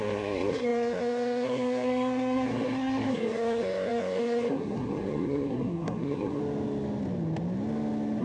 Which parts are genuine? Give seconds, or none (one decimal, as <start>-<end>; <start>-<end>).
6.4-8.2

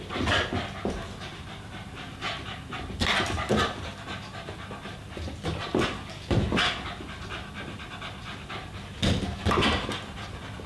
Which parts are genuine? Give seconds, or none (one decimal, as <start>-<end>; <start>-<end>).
0.0-10.7

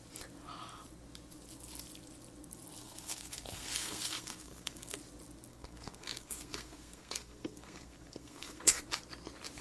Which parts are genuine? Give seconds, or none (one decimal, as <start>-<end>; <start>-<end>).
0.0-2.8; 5.0-5.5; 8.8-9.6

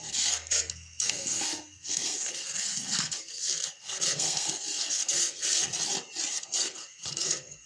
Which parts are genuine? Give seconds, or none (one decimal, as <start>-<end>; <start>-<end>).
5.7-6.3